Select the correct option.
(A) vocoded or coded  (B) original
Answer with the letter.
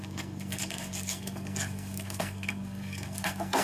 A